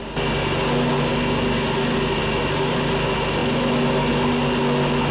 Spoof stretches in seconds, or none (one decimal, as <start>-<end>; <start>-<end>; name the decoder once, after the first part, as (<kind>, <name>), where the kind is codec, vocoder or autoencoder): none